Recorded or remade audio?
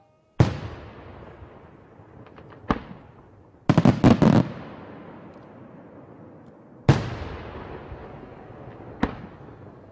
recorded